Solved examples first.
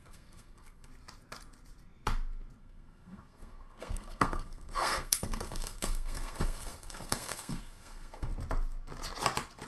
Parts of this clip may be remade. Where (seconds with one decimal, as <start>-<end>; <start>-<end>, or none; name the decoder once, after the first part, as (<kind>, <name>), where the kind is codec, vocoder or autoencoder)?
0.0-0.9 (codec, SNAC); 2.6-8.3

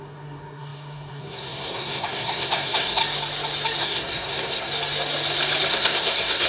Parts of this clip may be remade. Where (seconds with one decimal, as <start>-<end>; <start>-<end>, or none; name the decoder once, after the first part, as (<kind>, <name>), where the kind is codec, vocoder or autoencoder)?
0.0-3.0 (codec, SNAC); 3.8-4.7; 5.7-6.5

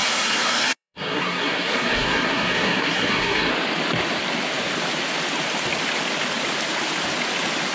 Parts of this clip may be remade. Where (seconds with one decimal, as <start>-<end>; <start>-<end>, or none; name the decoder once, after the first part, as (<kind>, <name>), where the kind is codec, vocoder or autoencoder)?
0.0-3.5 (codec, SNAC)

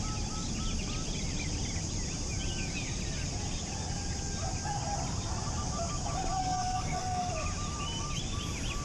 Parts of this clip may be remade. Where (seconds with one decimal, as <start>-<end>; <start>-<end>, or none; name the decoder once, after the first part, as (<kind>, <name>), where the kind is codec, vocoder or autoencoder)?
6.4-7.3 (codec, SNAC)

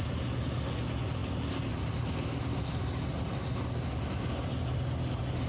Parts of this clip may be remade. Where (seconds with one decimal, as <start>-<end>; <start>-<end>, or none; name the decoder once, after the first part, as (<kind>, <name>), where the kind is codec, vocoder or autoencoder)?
none